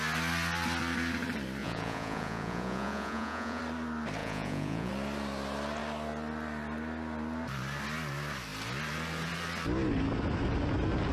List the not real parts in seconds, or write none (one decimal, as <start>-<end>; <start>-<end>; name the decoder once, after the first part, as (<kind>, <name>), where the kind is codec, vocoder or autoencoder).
1.6-3.6 (vocoder, Vocos); 4.2-4.9